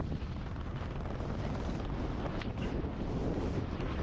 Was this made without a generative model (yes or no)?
yes